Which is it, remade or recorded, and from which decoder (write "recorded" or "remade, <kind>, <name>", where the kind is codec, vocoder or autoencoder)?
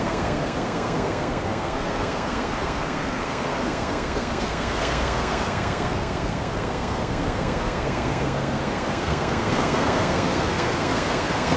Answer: remade, codec, SNAC